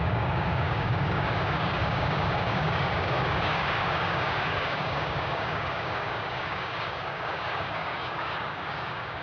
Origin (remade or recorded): remade